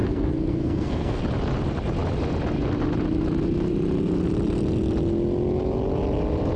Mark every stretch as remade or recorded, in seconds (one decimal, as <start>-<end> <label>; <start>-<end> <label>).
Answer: 0.0-1.2 remade; 1.2-6.6 recorded